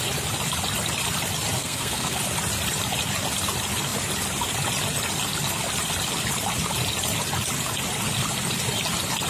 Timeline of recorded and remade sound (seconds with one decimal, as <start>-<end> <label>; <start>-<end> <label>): 0.0-1.6 recorded; 1.6-2.2 remade; 2.2-9.3 recorded